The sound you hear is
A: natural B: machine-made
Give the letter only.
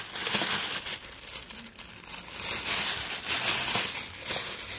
A